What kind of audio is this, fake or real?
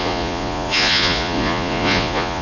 fake